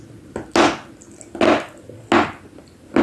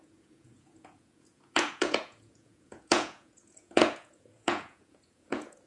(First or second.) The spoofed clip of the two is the second